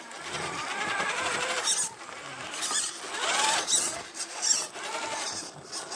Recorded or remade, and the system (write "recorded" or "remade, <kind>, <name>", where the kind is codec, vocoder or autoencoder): recorded